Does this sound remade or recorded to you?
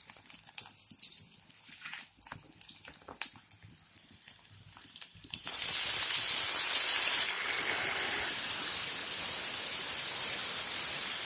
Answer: remade